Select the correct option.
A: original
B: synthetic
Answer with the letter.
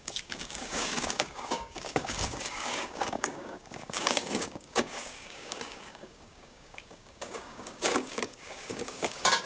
B